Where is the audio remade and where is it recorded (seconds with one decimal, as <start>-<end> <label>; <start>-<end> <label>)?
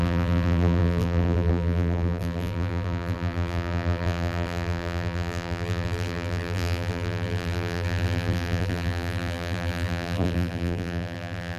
0.0-11.6 remade